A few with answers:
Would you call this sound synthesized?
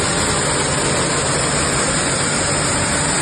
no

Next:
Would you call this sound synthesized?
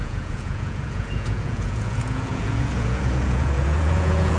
yes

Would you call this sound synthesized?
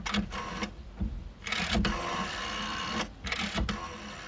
no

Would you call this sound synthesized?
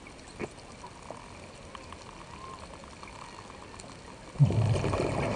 no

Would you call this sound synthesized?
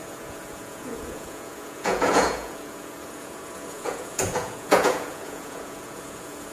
yes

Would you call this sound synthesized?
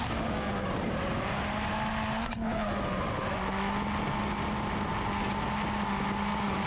no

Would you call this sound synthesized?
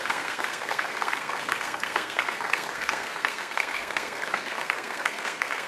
yes